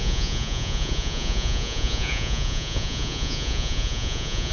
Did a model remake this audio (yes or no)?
yes